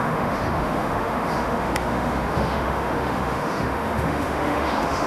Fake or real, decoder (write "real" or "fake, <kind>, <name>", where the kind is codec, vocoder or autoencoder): fake, autoencoder, DAC-VAE